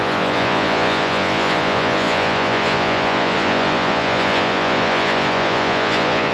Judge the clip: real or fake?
fake